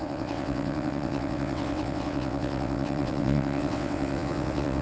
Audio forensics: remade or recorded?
remade